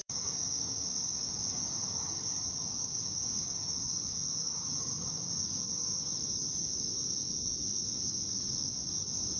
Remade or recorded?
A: remade